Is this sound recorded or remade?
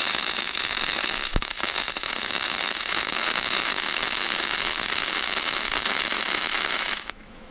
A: remade